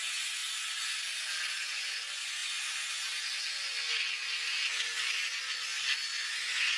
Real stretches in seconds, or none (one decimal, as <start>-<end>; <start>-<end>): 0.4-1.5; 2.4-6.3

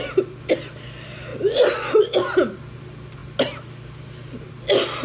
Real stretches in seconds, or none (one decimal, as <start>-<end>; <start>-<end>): 0.0-5.0

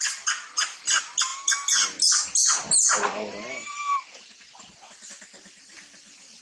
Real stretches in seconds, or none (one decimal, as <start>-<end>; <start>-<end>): 0.0-6.4

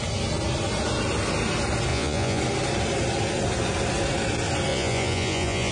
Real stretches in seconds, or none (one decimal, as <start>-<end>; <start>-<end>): 0.0-1.9; 2.4-4.7